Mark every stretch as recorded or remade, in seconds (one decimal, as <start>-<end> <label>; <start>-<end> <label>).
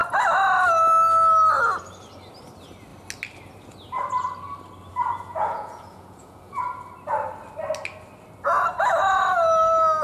0.0-4.9 recorded; 4.9-6.6 remade; 6.6-10.0 recorded